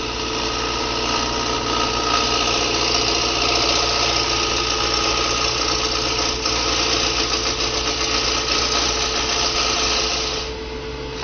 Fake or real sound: real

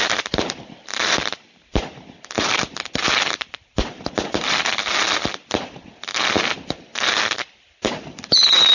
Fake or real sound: real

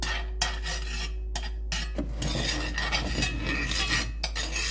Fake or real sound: real